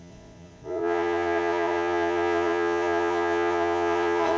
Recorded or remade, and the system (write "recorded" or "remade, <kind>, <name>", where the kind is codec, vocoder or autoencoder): remade, vocoder, Vocos